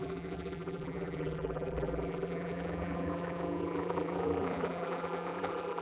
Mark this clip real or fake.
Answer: fake